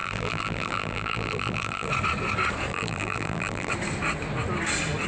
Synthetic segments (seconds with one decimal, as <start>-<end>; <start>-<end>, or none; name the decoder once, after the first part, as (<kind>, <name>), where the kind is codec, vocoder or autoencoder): 0.0-1.9 (vocoder, BigVGAN v2); 2.7-3.7